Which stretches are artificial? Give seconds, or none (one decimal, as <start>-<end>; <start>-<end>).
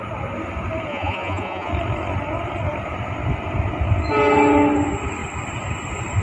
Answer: 0.9-1.7